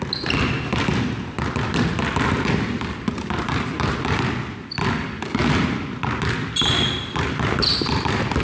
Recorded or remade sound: recorded